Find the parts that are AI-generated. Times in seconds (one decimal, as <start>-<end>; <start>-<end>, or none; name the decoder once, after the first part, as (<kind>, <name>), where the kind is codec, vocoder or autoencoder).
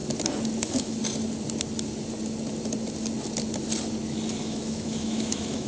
0.6-1.0 (autoencoder, DAC-VAE); 4.4-5.7